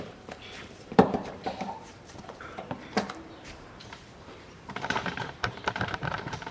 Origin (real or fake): fake